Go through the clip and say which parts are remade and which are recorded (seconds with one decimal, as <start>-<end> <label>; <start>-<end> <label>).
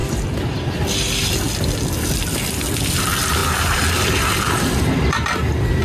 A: 0.0-5.8 recorded